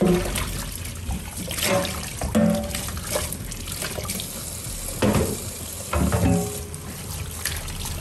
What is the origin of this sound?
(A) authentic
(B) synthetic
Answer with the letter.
A